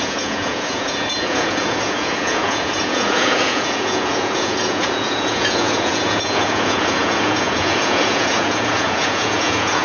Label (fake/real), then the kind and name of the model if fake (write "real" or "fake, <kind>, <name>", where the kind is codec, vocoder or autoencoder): fake, vocoder, Vocos